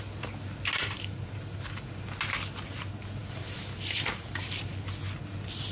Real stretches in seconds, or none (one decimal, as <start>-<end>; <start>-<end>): 0.0-0.8; 2.0-3.2; 4.7-5.7